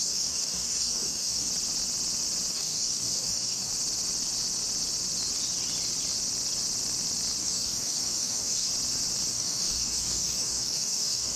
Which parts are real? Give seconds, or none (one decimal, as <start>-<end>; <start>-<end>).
1.5-2.5; 3.7-7.4; 8.7-9.3